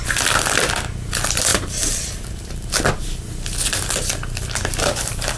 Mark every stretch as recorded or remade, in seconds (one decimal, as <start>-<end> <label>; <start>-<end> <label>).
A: 0.0-1.5 recorded; 1.5-2.9 remade; 2.9-5.4 recorded